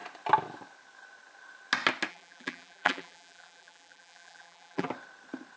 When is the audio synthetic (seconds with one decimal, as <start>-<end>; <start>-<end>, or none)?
2.1-4.9